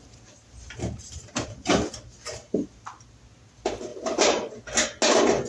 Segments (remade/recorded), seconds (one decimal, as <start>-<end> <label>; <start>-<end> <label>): 0.0-0.6 recorded; 0.6-1.8 remade; 1.8-3.9 recorded; 3.9-4.5 remade; 4.5-5.5 recorded